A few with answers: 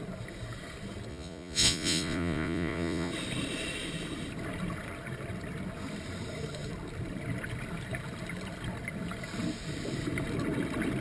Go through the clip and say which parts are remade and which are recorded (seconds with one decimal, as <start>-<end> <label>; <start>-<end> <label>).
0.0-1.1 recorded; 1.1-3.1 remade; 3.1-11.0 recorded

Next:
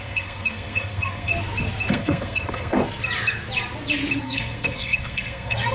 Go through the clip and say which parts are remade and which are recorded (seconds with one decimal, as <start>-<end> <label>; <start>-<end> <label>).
0.0-1.3 remade; 1.3-1.9 recorded; 1.9-2.8 remade; 2.8-4.2 recorded; 4.2-5.7 remade

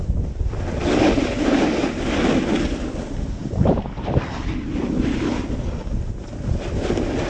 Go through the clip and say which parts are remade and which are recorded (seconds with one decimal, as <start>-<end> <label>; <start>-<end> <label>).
0.0-7.3 recorded